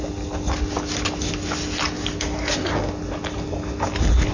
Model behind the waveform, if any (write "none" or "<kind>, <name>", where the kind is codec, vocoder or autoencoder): none